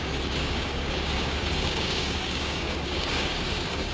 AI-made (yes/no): yes